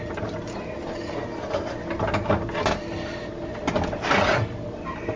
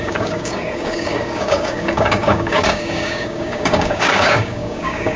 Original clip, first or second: first